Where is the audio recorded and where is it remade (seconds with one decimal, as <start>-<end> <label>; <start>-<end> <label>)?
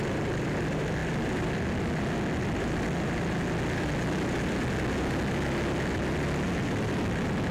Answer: 0.0-7.5 recorded